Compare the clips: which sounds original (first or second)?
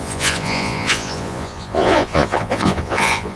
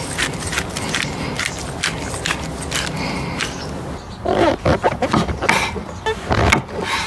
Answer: second